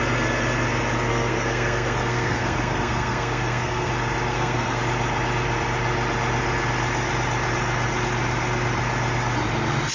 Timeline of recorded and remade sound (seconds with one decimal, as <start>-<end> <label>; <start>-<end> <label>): 0.0-1.1 recorded; 1.1-3.9 remade; 3.9-4.3 recorded; 4.3-4.8 remade; 4.8-9.9 recorded